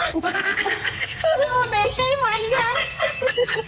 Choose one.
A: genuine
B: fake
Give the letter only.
B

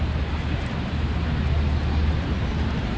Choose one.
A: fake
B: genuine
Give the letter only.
B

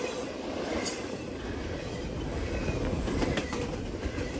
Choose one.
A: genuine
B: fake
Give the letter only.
B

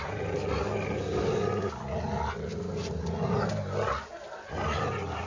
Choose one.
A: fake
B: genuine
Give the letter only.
B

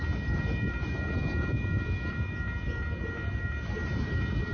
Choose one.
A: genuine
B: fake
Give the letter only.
A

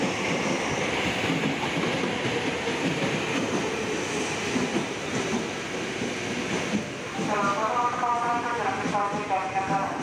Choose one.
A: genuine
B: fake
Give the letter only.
A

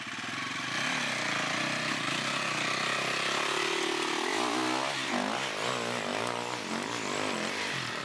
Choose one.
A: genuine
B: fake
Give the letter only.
A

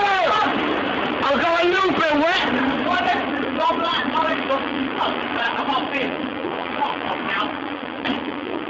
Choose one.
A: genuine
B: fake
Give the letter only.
B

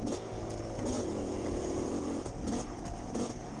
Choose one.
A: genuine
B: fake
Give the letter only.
B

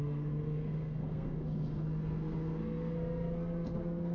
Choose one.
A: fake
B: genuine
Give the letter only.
A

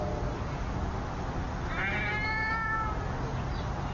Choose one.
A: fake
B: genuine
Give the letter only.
B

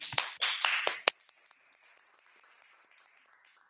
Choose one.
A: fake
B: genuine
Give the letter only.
B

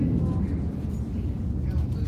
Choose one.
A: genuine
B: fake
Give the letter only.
A